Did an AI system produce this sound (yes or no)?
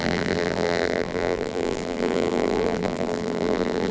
yes